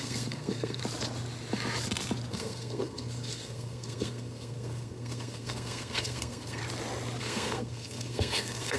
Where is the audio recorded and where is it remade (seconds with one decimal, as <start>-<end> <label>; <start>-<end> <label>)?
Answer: 0.0-0.8 remade; 0.8-2.3 recorded; 2.3-6.6 remade; 6.6-7.2 recorded; 7.2-8.8 remade